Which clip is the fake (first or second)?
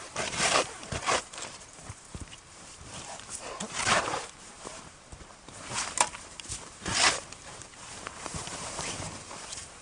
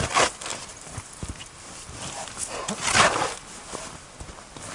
first